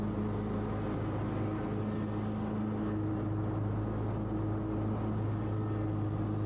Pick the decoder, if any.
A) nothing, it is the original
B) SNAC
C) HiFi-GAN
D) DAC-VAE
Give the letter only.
A